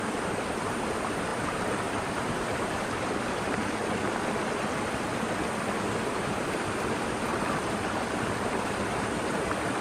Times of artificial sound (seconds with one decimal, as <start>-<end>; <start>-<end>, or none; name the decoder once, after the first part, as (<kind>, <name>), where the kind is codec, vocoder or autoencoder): 0.0-3.6 (vocoder, BigVGAN v2); 6.2-7.3; 8.4-9.8